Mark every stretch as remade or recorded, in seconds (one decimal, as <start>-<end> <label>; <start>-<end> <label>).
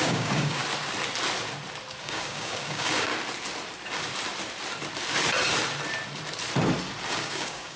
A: 0.0-0.6 remade; 0.6-2.0 recorded; 2.0-3.1 remade; 3.1-7.1 recorded; 7.1-7.8 remade